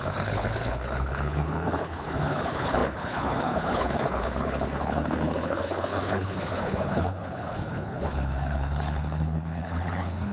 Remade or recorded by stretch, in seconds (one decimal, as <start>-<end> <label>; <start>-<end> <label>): 0.0-10.3 remade